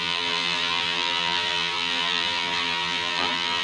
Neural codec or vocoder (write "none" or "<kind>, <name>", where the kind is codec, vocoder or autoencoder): vocoder, BigVGAN v2